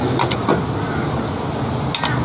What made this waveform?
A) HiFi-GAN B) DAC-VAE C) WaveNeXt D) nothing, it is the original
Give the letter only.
D